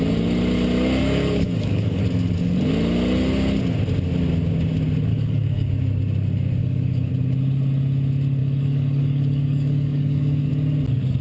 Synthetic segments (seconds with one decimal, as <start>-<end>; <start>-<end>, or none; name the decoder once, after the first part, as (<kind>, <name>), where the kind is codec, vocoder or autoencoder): 1.0-2.0 (codec, DAC); 5.1-5.7; 6.6-7.1; 8.4-10.5